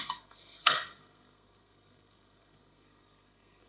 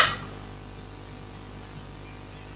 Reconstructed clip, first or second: first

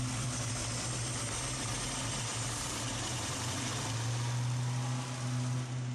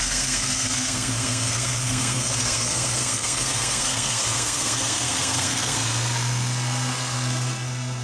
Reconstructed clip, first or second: second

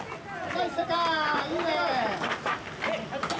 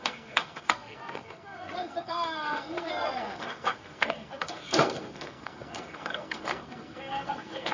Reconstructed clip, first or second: second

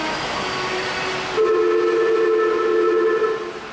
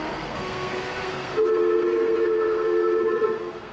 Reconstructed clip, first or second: second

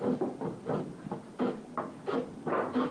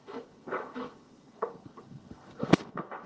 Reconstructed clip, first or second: second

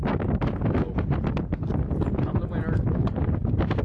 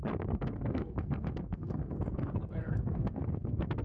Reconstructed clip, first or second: second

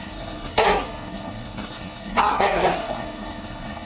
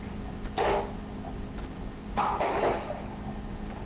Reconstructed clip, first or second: first